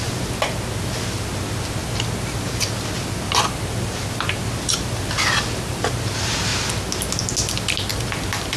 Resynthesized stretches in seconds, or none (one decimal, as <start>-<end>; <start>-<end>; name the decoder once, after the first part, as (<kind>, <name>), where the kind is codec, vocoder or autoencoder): none